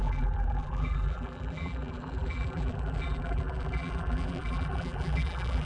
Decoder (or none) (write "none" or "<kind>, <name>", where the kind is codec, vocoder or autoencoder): vocoder, BigVGAN v2